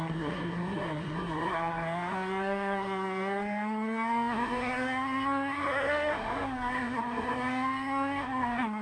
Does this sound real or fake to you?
fake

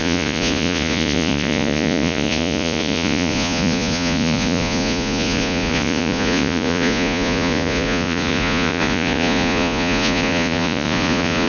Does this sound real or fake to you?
fake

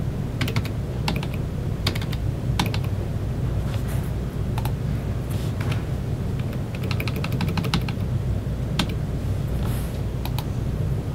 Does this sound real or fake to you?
real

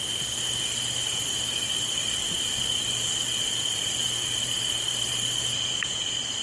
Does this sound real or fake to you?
real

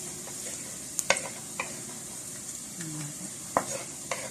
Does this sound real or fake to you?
fake